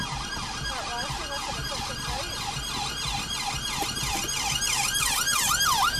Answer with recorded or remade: recorded